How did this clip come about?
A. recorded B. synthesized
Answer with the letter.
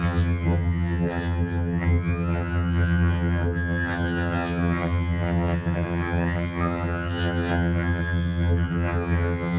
B